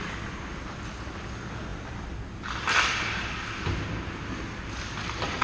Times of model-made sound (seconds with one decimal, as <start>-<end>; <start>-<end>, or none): none

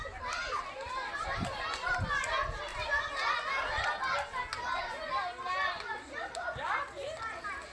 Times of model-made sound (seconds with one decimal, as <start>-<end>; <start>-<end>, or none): none

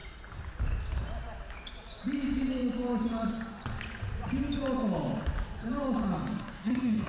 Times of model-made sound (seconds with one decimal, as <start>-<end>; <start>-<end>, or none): 6.3-7.1

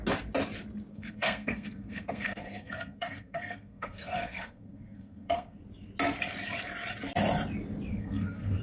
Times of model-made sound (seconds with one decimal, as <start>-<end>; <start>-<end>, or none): 0.9-5.6; 7.9-8.6

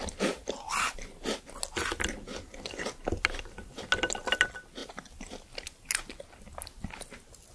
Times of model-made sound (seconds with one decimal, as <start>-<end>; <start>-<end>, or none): none

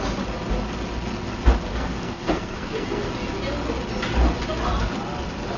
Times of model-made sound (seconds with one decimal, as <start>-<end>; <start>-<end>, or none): 1.7-3.1